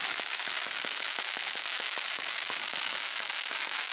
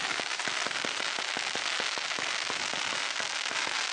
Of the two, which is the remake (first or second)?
first